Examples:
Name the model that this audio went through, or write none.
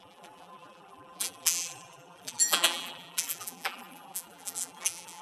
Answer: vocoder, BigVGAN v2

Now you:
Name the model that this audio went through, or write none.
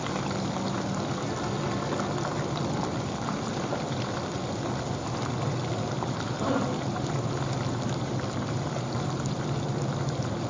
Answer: none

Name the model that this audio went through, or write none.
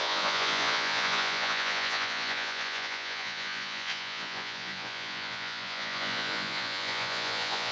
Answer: vocoder, Vocos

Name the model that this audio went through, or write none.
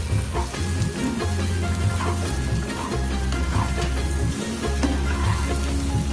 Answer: none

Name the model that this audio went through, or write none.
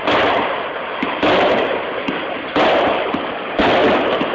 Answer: none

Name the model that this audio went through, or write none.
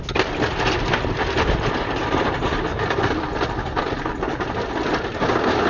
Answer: none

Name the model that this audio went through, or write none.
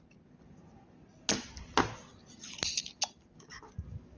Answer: none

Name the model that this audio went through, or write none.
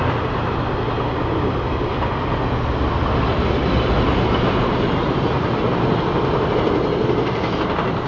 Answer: none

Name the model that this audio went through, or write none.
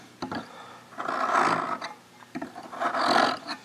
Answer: none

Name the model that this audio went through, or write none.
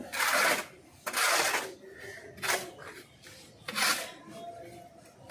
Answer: none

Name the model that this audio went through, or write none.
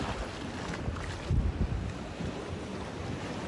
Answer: none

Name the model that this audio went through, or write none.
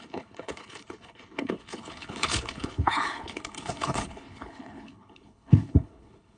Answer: codec, HILCodec